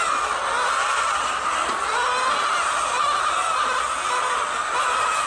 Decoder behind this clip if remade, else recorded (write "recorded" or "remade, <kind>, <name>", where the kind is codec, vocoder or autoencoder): recorded